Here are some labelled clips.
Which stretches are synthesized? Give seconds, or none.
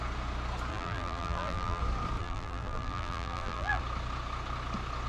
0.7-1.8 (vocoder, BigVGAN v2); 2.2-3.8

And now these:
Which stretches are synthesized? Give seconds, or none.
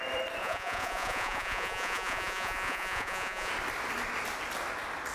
0.4-3.5 (vocoder, Vocos)